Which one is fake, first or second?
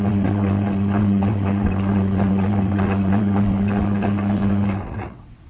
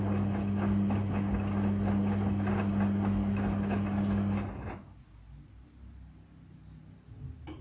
first